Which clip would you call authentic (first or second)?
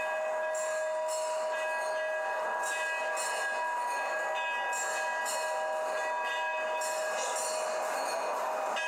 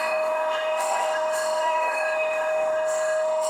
first